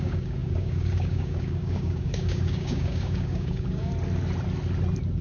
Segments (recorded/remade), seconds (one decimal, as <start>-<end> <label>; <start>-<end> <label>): 0.0-3.9 remade; 3.9-5.2 recorded